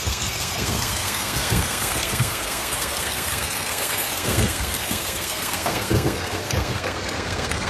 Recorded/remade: remade